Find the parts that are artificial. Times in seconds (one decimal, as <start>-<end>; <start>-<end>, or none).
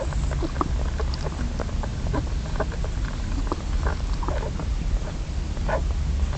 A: 1.9-4.2; 4.7-6.4